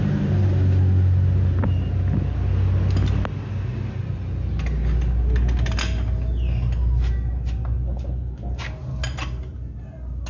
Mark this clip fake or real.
real